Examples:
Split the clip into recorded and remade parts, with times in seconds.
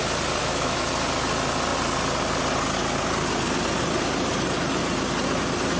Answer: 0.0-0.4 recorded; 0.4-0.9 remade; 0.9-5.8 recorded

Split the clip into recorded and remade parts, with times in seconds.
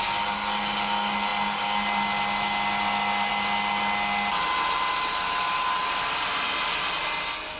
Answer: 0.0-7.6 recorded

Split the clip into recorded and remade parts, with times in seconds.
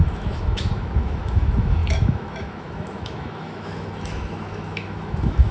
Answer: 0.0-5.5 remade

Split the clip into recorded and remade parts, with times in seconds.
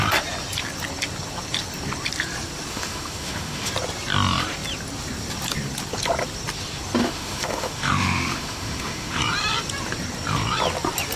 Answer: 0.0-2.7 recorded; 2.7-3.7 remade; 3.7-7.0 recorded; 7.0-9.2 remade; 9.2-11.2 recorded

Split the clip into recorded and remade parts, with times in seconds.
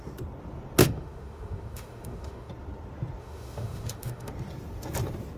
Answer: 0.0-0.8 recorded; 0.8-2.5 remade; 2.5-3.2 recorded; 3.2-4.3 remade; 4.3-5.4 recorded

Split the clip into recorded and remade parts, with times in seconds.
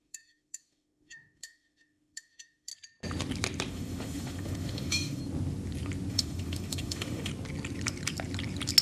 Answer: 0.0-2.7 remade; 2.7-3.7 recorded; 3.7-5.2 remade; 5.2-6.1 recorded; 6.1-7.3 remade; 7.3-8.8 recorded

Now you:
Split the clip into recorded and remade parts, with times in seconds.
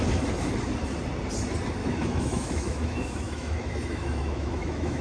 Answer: 0.0-1.8 recorded; 1.8-5.0 remade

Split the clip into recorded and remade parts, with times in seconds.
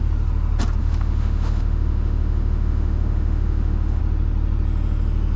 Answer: 0.0-0.8 recorded; 0.8-4.0 remade; 4.0-5.4 recorded